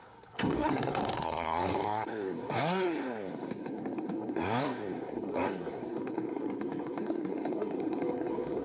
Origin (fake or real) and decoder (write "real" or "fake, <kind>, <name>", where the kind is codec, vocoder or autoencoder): fake, codec, SNAC